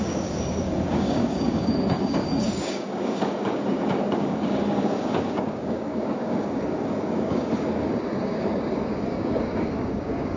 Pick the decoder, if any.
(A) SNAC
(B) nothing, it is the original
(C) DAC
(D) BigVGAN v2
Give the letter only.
C